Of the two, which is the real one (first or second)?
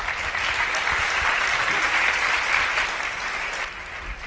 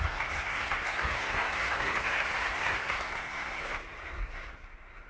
first